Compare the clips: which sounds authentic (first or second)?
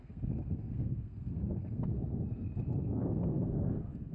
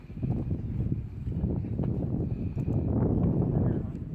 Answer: second